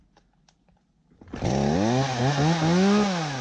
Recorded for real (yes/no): yes